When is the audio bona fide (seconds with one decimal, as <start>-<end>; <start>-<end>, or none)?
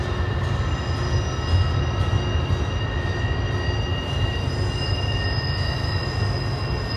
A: 0.0-3.9; 4.5-7.0